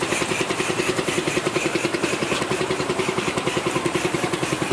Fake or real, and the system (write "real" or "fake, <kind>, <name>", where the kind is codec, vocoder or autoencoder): fake, vocoder, BigVGAN v2